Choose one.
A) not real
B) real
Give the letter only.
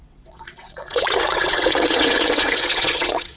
A